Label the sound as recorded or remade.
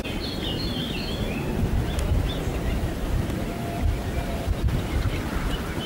recorded